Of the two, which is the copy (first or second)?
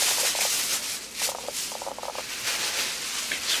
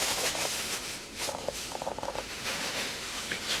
second